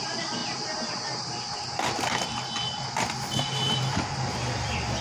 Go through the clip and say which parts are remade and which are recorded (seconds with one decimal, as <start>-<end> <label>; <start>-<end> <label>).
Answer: 0.0-0.4 remade; 0.4-3.4 recorded; 3.4-5.0 remade